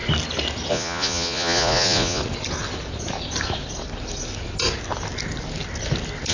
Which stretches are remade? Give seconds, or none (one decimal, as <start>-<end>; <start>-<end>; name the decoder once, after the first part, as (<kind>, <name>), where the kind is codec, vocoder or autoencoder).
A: 0.7-2.2 (vocoder, Vocos)